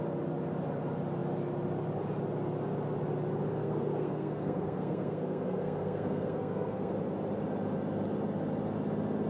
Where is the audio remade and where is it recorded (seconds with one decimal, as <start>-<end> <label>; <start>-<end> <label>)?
0.0-3.5 recorded; 3.5-6.9 remade; 6.9-9.3 recorded